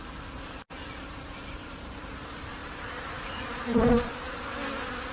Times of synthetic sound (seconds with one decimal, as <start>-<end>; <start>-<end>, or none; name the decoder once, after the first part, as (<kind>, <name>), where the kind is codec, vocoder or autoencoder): 0.0-2.6 (vocoder, BigVGAN v2); 3.1-4.1